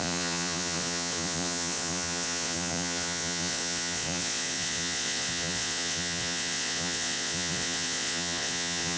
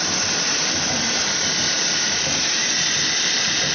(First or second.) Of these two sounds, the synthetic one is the first